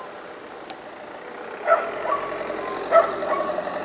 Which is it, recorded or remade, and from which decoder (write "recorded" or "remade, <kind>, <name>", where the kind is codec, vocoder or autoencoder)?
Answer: recorded